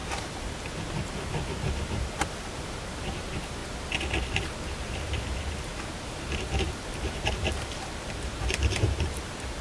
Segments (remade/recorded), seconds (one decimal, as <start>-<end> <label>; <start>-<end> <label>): 0.0-1.5 recorded; 1.5-3.6 remade; 3.6-6.8 recorded; 6.8-9.6 remade